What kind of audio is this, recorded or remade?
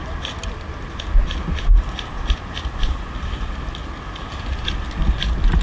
recorded